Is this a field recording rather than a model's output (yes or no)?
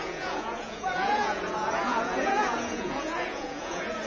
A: no